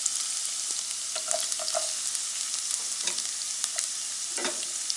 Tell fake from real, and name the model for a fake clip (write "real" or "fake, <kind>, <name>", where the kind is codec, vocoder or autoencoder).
real